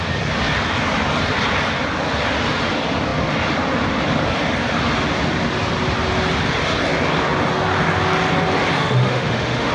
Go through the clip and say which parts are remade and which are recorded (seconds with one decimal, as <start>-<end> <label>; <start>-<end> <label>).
0.0-8.8 recorded; 8.8-9.7 remade